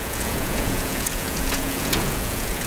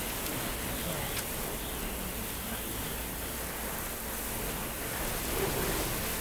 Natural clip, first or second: second